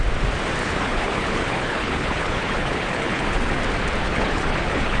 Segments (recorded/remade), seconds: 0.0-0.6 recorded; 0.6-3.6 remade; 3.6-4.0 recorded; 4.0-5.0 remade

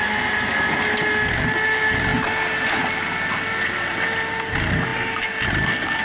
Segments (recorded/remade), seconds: 0.0-6.0 recorded